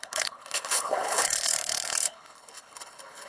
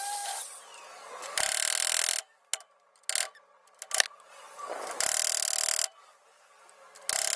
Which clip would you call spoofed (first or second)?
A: first